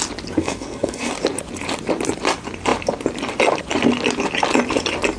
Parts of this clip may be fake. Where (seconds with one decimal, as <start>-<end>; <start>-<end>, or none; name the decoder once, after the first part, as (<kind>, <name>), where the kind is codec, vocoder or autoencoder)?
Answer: 0.4-1.1 (codec, SNAC)